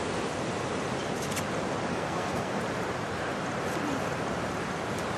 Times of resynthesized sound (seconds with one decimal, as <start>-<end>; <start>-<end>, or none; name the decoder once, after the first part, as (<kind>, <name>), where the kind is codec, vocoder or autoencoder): 1.9-2.6 (codec, SNAC)